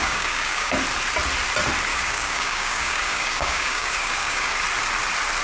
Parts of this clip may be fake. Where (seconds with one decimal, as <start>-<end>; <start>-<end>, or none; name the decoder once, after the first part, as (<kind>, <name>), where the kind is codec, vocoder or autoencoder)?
0.0-0.7 (codec, DAC); 1.9-4.5